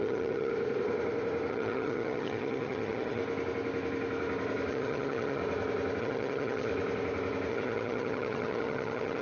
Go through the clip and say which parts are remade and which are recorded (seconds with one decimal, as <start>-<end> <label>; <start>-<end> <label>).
0.0-0.5 remade; 0.5-1.5 recorded; 1.5-3.2 remade; 3.2-4.7 recorded; 4.7-5.4 remade; 5.4-6.0 recorded; 6.0-6.7 remade; 6.7-7.5 recorded; 7.5-9.2 remade